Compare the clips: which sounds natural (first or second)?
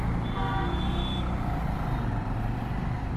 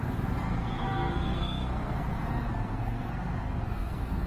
first